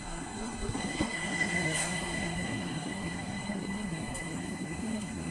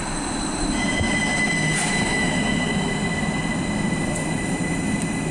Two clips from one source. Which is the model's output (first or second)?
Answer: first